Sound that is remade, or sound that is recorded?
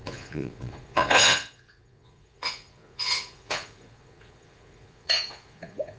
remade